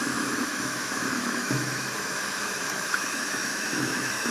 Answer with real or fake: fake